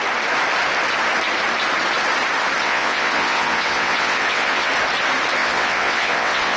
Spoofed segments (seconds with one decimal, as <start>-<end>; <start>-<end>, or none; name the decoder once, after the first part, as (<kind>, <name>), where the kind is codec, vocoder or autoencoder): 2.6-4.7 (vocoder, WaveNeXt); 5.4-6.6